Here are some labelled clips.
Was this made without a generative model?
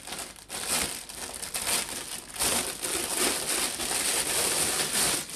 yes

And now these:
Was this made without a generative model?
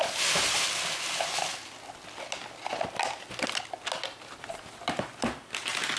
yes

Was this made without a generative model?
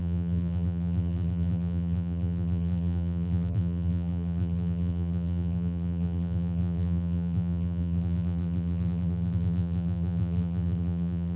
no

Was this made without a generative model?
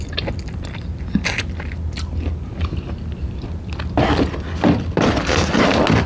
yes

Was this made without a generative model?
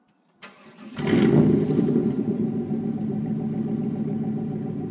no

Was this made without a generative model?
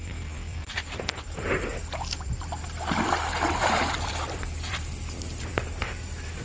no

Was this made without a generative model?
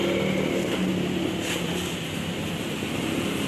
yes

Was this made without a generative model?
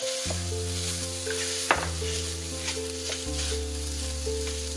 yes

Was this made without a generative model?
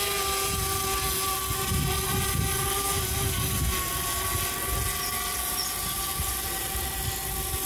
yes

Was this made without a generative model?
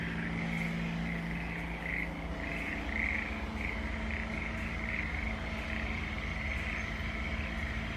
yes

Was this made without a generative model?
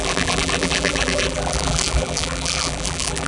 no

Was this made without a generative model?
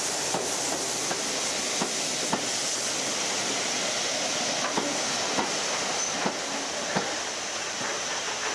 yes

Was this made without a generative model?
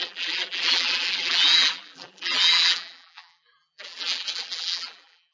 no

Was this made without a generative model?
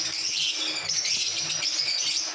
yes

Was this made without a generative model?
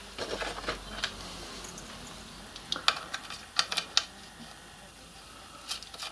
yes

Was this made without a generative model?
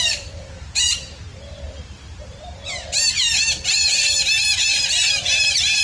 no